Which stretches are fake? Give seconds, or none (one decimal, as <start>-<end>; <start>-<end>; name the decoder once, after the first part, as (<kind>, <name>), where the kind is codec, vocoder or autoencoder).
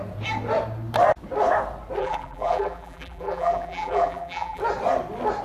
2.0-4.6 (vocoder, BigVGAN v2)